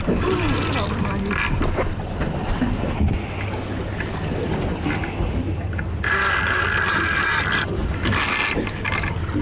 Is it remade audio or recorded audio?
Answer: recorded